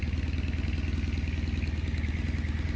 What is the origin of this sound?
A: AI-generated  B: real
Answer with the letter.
B